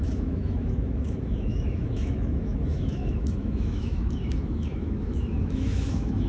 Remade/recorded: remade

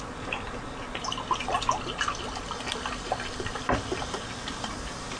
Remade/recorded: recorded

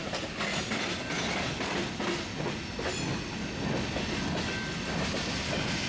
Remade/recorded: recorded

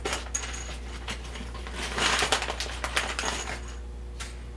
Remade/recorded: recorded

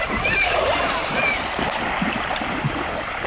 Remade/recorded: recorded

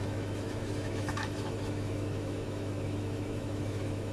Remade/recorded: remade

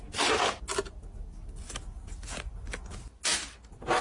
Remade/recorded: recorded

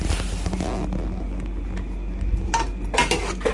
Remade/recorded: recorded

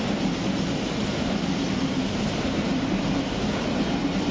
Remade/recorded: recorded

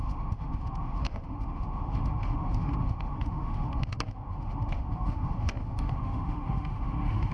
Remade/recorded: remade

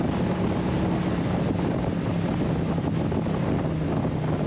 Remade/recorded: recorded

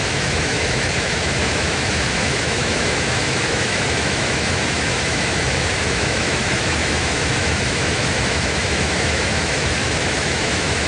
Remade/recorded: remade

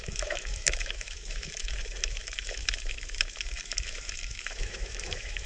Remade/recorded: remade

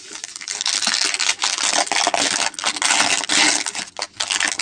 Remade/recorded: recorded